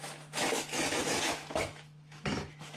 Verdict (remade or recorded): remade